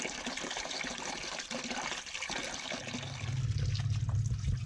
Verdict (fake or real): real